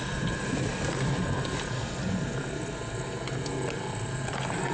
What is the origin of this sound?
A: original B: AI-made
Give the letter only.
A